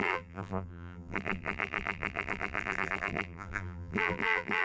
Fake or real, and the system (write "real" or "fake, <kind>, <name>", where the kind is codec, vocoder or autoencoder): fake, vocoder, BigVGAN v2